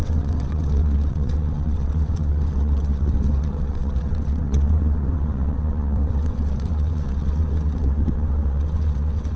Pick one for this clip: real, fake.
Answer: fake